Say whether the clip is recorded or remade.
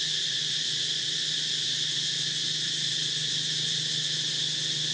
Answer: recorded